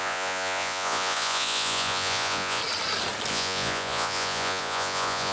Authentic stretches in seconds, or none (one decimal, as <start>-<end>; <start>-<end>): 2.6-3.3